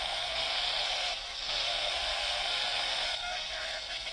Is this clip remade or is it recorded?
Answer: remade